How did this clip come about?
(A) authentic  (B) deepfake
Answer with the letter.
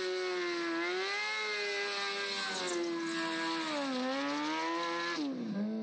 A